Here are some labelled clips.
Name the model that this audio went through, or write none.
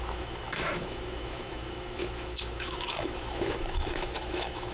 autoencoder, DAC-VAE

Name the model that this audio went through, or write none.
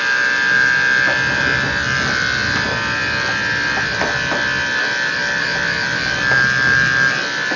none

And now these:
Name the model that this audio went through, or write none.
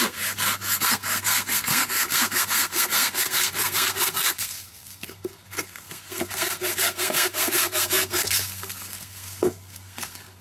codec, SNAC